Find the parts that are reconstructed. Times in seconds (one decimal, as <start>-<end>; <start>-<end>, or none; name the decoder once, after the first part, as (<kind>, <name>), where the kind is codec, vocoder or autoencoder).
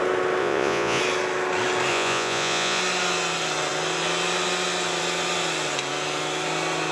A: 0.4-1.0 (vocoder, Vocos); 1.9-2.8